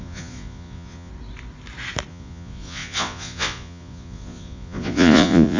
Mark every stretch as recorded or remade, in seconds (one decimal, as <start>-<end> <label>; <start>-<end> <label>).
0.0-1.1 remade; 1.1-2.1 recorded; 2.1-5.6 remade